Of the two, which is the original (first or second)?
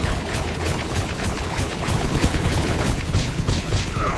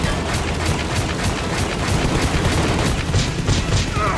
second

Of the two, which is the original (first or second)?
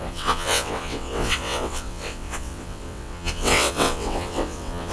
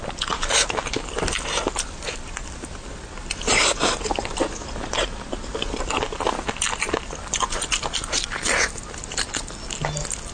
second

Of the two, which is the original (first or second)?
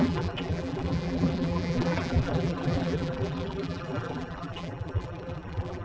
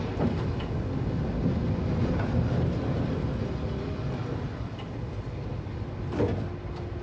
second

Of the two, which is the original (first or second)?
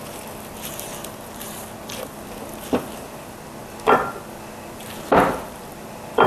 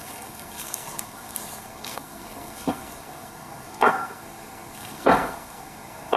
first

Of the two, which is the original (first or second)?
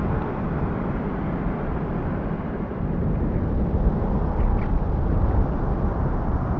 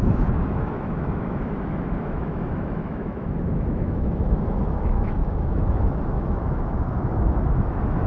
first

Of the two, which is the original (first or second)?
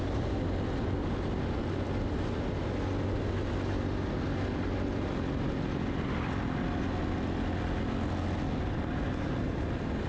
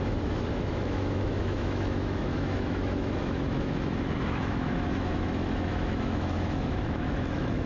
first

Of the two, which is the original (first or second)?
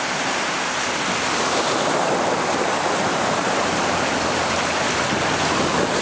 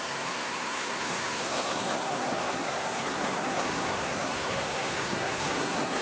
first